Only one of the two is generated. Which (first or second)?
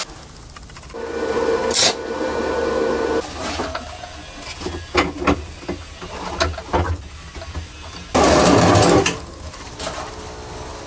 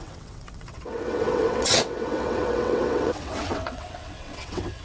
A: second